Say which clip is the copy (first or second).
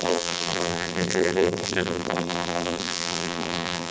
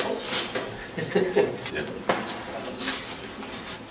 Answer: first